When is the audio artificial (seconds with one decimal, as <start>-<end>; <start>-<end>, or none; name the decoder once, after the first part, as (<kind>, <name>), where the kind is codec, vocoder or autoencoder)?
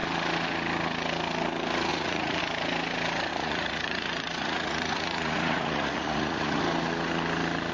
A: 1.9-2.4 (vocoder, Vocos); 3.3-6.6